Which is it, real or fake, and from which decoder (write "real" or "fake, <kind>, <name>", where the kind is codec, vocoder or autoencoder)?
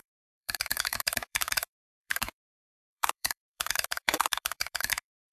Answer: fake, autoencoder, DAC-VAE